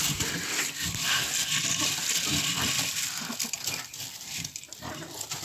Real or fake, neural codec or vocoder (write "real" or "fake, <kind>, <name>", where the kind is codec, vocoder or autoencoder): real